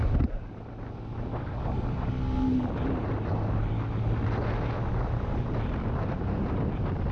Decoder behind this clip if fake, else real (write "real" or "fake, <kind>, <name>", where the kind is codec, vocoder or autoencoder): real